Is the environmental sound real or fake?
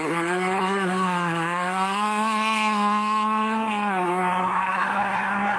fake